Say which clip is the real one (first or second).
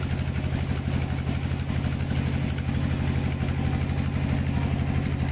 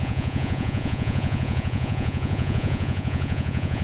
first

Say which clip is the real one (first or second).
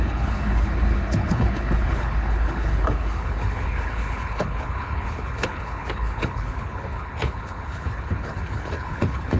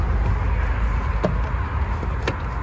second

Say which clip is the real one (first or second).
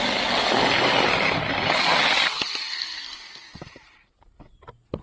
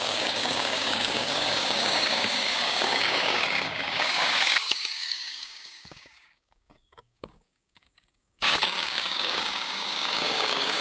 first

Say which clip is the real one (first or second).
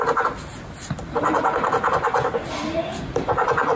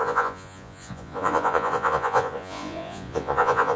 first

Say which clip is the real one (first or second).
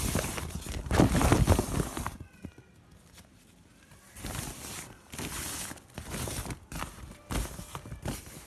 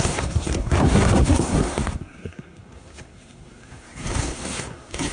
first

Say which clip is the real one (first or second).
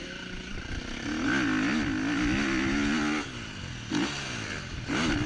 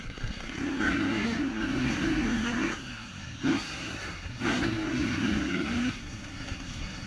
first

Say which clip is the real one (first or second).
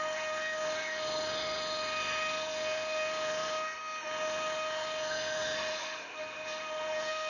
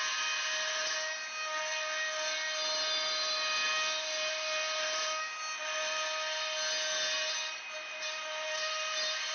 second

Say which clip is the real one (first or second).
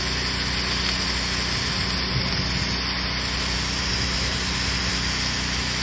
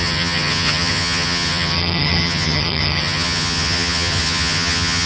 first